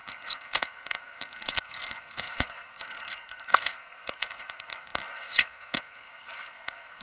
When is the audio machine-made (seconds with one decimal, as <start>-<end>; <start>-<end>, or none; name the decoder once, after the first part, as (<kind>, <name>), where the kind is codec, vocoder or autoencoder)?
0.0-7.0 (codec, SNAC)